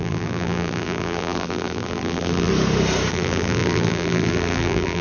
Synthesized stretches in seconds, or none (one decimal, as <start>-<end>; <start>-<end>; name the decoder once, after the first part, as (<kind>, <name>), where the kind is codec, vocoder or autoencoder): 0.0-2.5 (vocoder, BigVGAN v2); 3.1-5.0